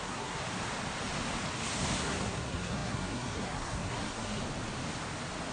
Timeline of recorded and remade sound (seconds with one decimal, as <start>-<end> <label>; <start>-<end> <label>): 0.0-0.4 remade; 0.4-2.0 recorded; 2.0-4.4 remade; 4.4-5.5 recorded